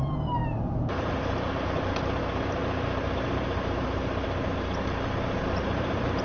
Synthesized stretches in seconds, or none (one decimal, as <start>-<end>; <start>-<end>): 0.0-6.2